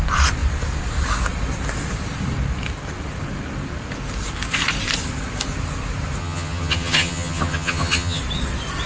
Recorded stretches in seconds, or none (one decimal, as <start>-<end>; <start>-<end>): 0.0-6.2; 8.2-8.9